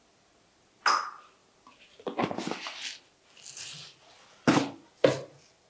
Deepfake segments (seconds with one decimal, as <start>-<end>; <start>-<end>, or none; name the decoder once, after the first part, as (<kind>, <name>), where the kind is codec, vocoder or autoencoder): none